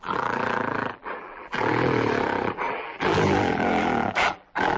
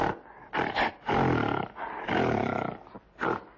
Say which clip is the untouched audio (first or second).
second